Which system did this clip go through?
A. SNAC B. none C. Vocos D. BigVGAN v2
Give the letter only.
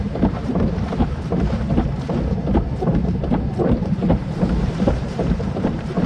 D